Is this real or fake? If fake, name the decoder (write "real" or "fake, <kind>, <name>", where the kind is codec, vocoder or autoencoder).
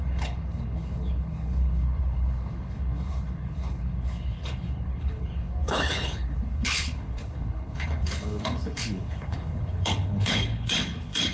fake, codec, HILCodec